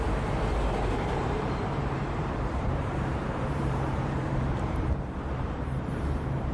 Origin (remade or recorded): remade